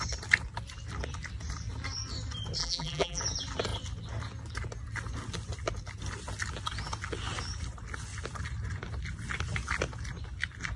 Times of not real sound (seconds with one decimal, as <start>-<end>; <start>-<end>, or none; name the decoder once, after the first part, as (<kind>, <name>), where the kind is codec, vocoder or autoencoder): 2.6-3.2 (vocoder, BigVGAN v2)